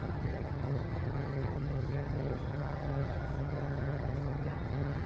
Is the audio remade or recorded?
remade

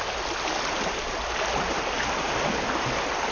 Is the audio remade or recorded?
recorded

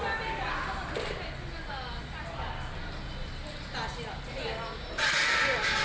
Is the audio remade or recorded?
recorded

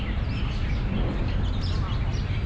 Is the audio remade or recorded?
recorded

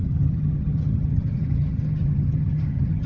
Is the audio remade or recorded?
remade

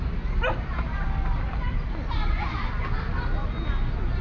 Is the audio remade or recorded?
recorded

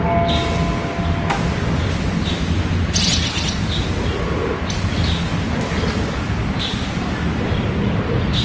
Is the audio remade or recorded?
recorded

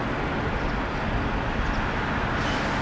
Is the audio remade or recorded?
recorded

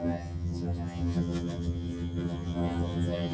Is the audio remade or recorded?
remade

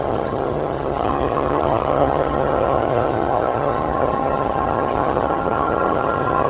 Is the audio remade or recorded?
remade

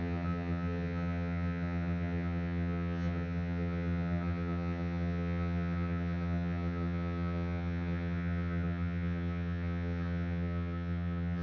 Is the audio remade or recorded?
remade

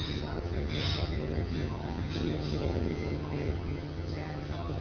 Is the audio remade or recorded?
remade